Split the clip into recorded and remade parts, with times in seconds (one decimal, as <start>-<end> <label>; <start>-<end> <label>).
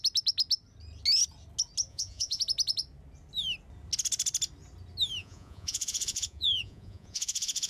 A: 0.0-1.9 recorded; 1.9-2.4 remade; 2.4-5.2 recorded; 5.2-7.7 remade